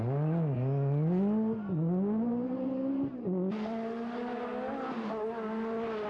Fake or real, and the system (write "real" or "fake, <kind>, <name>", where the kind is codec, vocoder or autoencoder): real